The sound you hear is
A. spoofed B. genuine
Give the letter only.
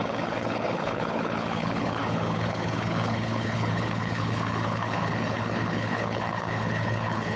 A